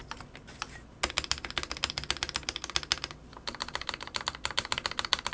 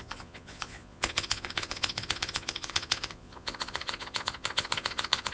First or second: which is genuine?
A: first